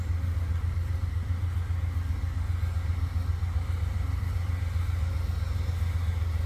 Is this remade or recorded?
recorded